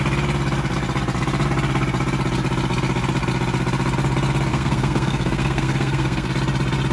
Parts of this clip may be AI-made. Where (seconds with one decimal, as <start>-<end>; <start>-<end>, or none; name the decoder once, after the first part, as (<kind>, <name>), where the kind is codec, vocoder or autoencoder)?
4.5-6.3 (codec, SNAC)